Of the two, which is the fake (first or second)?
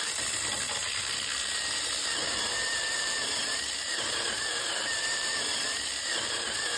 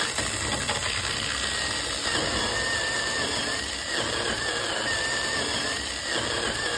first